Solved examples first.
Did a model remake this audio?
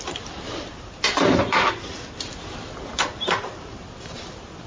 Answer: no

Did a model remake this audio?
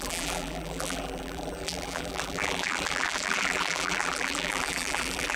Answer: yes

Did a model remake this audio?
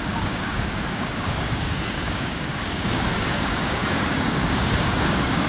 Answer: yes